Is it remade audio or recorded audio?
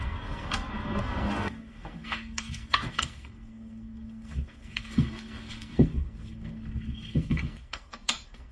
remade